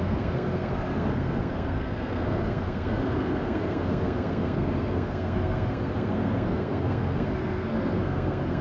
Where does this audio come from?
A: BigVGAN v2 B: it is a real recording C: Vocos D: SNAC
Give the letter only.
D